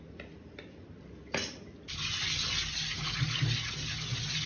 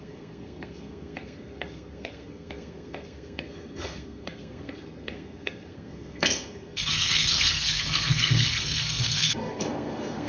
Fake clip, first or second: second